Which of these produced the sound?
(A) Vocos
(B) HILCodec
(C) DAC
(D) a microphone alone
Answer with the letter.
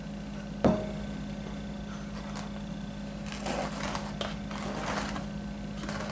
D